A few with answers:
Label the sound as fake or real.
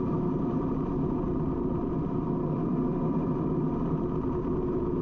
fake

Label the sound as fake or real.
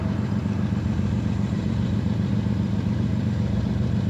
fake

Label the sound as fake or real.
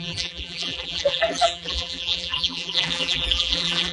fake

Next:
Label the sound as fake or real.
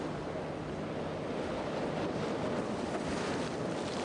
real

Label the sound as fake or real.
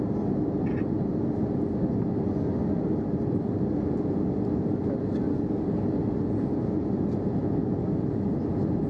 real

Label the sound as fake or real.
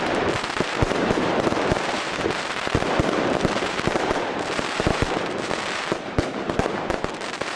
fake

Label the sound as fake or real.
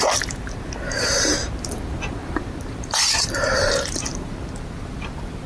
fake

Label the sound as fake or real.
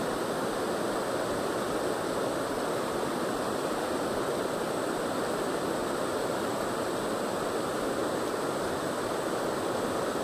real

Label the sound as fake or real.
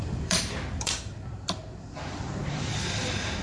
fake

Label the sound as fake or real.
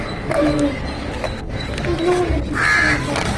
real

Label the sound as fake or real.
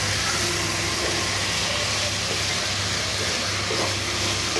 real